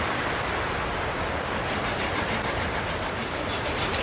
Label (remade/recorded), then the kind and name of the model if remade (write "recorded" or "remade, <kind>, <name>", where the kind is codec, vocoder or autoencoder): recorded